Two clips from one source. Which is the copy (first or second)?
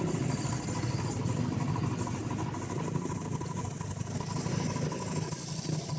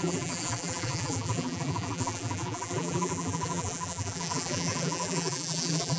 second